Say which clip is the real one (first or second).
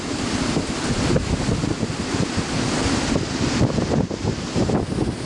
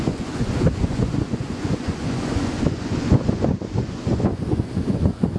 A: first